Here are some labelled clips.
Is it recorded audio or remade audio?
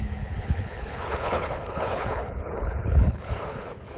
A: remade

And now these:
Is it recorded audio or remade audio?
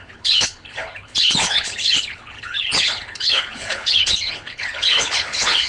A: remade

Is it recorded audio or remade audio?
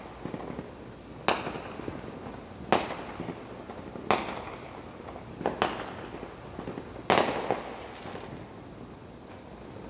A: recorded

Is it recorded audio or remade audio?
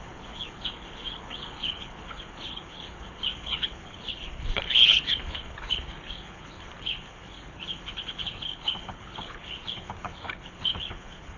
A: remade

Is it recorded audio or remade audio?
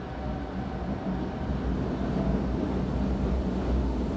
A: recorded